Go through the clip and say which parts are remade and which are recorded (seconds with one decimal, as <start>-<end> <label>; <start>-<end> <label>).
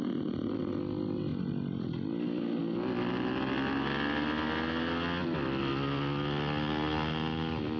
0.0-7.8 recorded